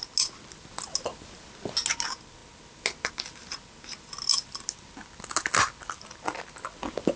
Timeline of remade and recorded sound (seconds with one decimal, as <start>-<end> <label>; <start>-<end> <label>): 0.0-7.2 recorded